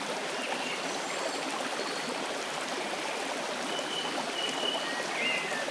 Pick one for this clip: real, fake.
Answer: real